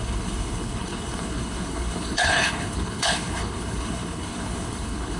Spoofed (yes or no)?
yes